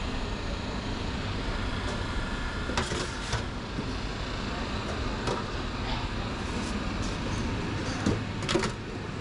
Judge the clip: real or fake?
real